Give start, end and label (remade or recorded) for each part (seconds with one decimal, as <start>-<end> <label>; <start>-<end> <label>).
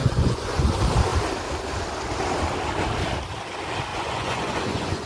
0.0-0.7 remade; 0.7-3.9 recorded; 3.9-5.1 remade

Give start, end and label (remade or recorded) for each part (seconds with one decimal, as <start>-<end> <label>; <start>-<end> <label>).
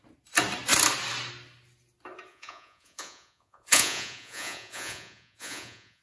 0.0-2.3 recorded; 2.3-6.0 remade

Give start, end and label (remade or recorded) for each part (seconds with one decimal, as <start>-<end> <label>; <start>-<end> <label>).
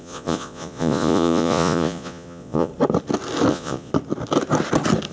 0.0-2.7 remade; 2.7-3.5 recorded; 3.5-3.9 remade; 3.9-5.1 recorded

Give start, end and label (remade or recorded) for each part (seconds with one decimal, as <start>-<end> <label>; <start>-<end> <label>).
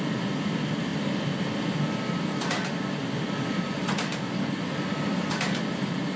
0.0-6.2 recorded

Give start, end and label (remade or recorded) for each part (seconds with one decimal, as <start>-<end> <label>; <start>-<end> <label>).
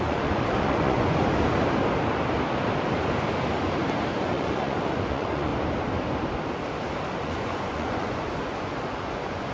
0.0-1.2 remade; 1.2-4.2 recorded; 4.2-5.5 remade; 5.5-7.2 recorded; 7.2-9.5 remade